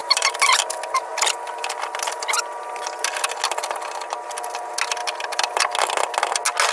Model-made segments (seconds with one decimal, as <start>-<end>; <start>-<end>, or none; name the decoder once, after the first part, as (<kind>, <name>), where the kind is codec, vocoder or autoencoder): 0.0-0.7 (vocoder, BigVGAN v2); 1.1-2.1; 5.0-5.6